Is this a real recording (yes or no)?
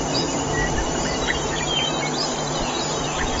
no